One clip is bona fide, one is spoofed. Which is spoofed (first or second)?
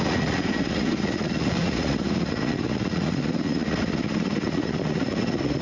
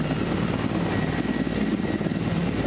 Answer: first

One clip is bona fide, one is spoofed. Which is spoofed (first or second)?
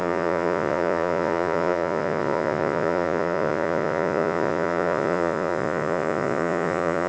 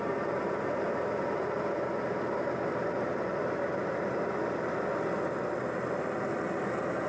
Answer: first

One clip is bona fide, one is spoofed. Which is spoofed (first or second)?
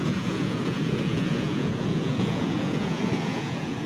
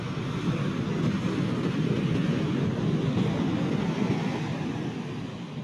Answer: first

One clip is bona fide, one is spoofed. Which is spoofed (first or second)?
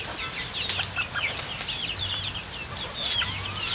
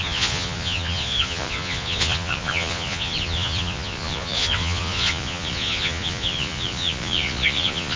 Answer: second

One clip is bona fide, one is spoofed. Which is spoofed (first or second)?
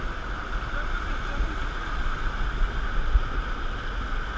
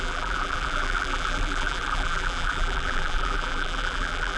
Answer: second